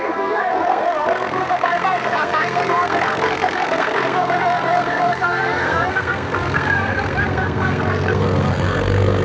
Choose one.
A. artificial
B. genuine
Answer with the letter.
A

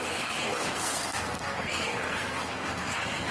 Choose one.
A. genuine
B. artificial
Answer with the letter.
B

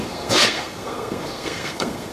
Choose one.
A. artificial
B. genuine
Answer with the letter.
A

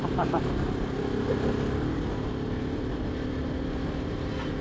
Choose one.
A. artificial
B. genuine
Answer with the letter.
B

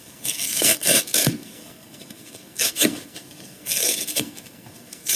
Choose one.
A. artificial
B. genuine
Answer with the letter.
A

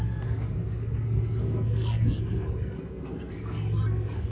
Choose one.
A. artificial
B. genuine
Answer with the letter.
A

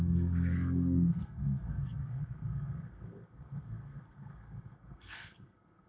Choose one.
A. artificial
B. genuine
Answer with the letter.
A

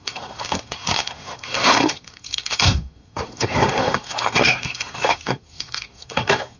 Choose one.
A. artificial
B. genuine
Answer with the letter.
A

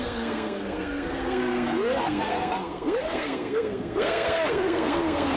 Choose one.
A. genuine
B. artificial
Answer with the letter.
B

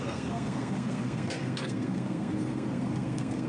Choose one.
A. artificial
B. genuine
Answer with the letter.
A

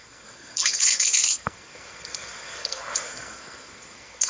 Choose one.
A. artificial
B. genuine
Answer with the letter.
A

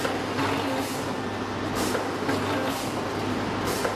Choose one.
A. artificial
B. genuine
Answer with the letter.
B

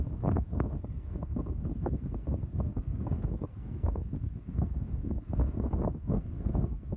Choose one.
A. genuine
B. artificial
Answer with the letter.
B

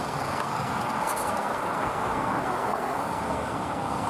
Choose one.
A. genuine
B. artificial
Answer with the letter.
B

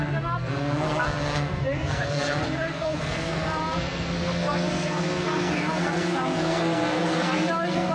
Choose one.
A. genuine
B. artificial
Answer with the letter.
B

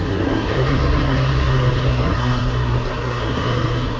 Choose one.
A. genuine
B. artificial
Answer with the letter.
B